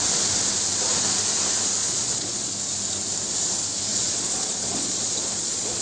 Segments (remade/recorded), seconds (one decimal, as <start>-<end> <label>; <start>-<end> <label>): 0.0-1.8 recorded; 1.8-2.5 remade; 2.5-3.9 recorded; 3.9-5.8 remade